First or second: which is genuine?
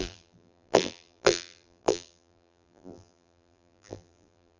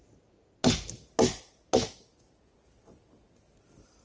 second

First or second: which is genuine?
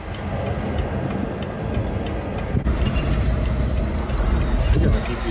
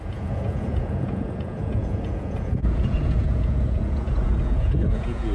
first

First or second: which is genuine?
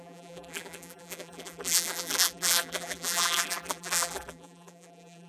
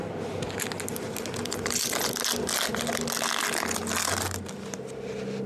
second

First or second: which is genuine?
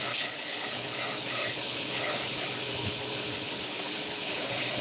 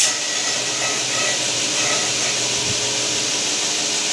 second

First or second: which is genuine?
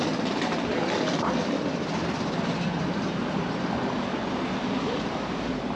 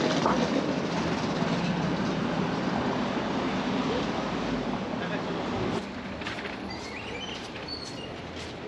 second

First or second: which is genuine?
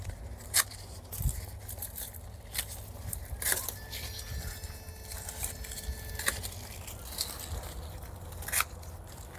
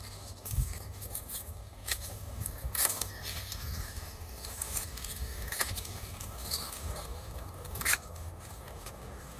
first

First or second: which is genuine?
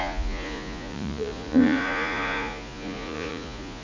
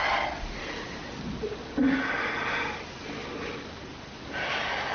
second